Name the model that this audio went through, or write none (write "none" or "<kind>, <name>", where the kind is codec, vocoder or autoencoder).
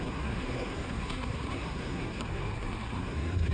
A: codec, SNAC